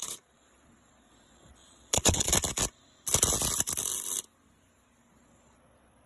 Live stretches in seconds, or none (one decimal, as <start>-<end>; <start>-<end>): 2.3-5.2